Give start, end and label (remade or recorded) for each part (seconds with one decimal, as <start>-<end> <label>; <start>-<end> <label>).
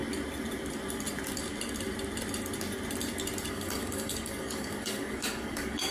0.0-3.5 recorded; 3.5-5.9 remade